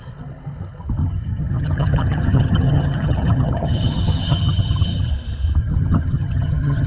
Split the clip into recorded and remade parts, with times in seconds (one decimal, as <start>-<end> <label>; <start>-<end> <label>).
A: 0.0-1.0 recorded; 1.0-5.1 remade; 5.1-5.6 recorded; 5.6-6.9 remade